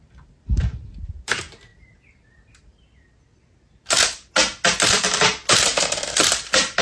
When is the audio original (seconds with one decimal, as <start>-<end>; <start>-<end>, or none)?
1.7-5.8

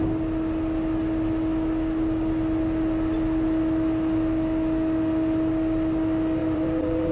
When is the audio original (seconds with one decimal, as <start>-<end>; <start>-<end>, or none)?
0.0-6.4

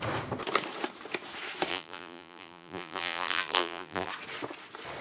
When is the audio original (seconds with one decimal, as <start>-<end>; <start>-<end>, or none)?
0.0-1.7; 4.1-5.0

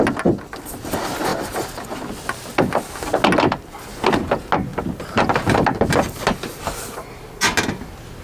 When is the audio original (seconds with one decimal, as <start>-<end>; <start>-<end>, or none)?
0.0-1.3; 1.9-4.7; 5.9-8.2

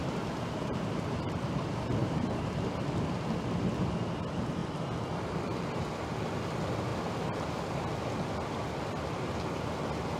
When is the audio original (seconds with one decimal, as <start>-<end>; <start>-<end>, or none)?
1.4-2.0; 2.7-10.2